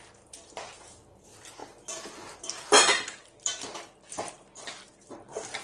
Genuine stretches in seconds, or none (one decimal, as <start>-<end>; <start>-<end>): 0.0-5.6